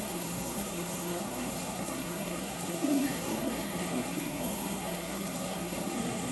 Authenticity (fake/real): fake